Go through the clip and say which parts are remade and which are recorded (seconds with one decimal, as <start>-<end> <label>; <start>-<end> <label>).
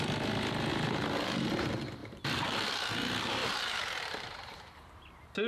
0.0-0.7 recorded; 0.7-1.5 remade; 1.5-2.0 recorded; 2.0-2.5 remade; 2.5-3.4 recorded; 3.4-5.1 remade; 5.1-5.5 recorded